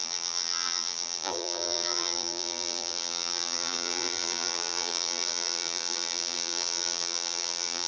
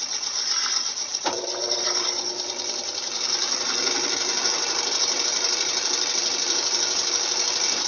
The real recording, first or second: second